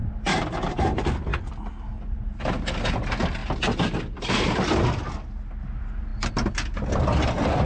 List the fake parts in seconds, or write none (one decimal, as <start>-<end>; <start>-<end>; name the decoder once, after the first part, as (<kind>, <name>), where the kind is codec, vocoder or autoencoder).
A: none